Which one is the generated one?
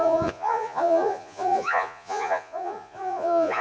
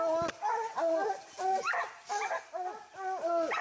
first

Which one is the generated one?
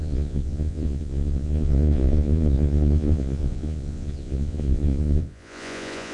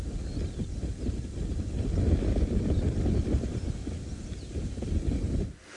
first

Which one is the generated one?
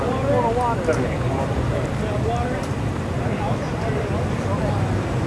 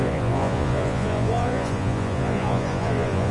second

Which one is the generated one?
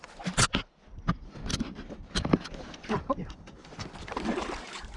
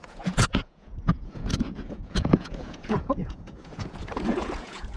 second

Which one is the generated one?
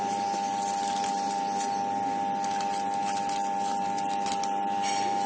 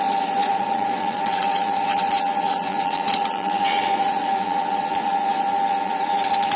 second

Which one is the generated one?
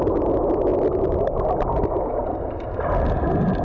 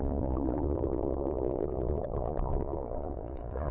second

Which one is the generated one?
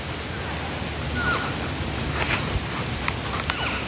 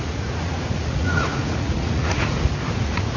second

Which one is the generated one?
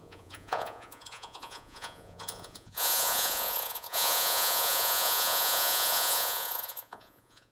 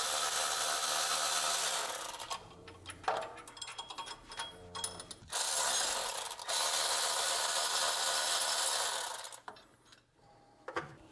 first